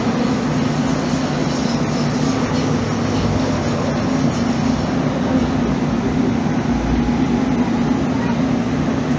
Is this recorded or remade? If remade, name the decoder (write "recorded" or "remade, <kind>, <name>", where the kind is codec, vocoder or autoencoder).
recorded